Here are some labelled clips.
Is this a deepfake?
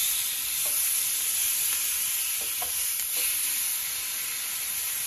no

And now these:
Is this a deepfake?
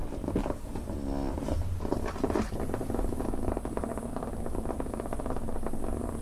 no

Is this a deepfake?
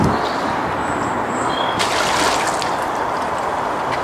yes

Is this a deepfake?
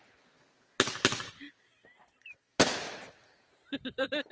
no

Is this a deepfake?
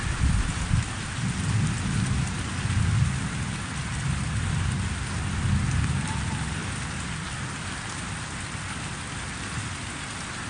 no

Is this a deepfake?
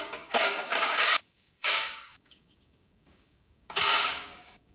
yes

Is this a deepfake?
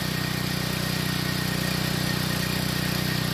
no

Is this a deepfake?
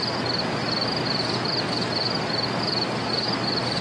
no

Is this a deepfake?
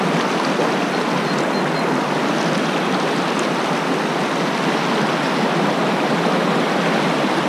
no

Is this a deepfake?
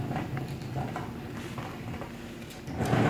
no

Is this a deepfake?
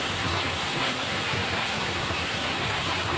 yes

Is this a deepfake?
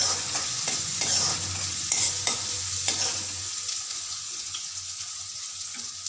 yes